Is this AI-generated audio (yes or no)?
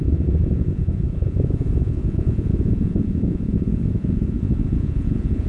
yes